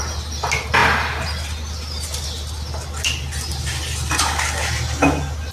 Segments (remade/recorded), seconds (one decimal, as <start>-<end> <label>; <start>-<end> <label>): 0.0-5.5 recorded